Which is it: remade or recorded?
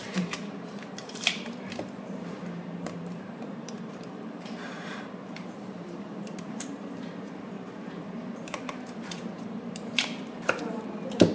remade